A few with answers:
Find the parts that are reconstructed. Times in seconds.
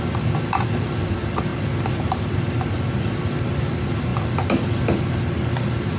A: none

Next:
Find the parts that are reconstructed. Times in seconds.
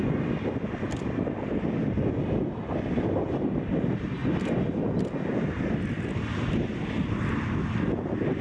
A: none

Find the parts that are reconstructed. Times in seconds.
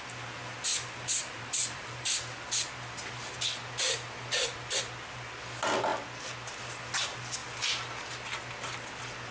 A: 0.7-2.1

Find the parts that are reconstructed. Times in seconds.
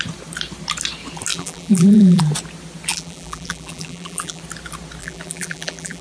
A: 1.3-2.2; 2.9-4.4; 5.0-6.0